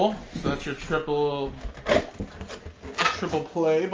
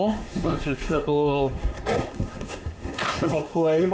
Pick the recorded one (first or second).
first